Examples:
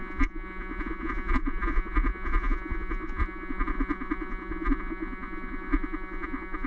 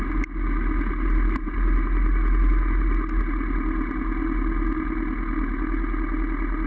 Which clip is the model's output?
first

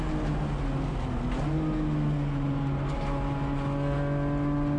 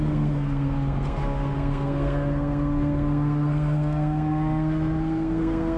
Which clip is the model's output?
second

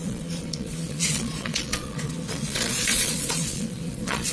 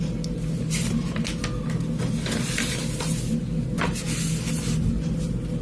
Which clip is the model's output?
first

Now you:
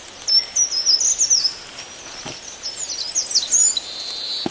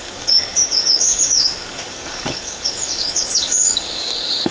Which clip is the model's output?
second